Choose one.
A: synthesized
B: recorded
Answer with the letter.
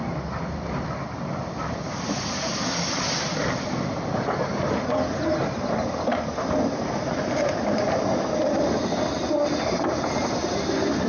B